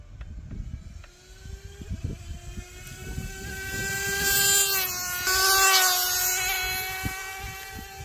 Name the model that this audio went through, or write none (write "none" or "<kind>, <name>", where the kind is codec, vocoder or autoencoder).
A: none